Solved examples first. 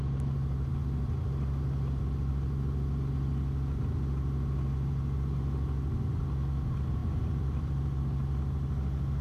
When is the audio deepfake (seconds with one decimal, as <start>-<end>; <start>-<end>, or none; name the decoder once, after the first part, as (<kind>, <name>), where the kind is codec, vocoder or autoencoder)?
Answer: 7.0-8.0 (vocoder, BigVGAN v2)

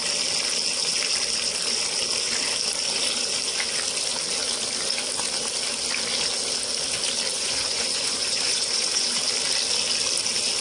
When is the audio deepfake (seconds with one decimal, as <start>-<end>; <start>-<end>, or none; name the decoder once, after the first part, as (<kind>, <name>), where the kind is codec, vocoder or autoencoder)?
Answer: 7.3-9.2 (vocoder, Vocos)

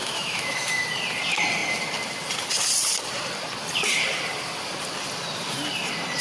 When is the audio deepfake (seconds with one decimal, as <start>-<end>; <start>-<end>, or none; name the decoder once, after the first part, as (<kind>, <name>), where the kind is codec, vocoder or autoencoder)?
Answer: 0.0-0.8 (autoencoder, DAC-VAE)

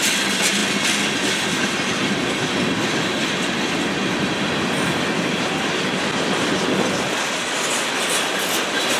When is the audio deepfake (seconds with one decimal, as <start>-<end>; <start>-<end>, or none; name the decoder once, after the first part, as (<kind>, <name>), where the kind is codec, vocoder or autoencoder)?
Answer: none